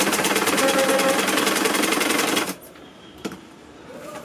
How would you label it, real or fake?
fake